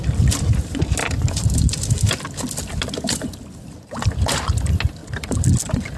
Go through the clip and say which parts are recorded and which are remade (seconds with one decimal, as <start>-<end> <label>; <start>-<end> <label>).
0.0-1.0 recorded; 1.0-2.1 remade; 2.1-5.0 recorded; 5.0-5.6 remade; 5.6-6.0 recorded